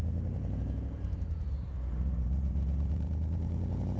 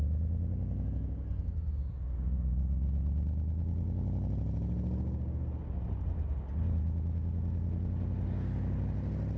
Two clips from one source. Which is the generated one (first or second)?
first